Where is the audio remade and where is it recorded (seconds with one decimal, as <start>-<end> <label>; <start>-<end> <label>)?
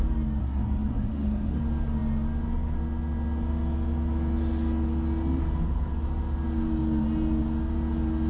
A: 0.0-0.4 recorded; 0.4-1.6 remade; 1.6-8.3 recorded